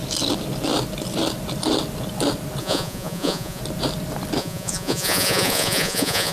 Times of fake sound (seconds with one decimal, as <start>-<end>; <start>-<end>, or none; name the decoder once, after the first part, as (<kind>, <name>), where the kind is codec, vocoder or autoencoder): 2.6-3.6 (vocoder, Vocos); 4.4-6.3